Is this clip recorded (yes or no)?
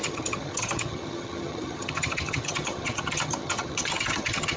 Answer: no